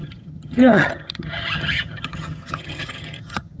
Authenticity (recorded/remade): remade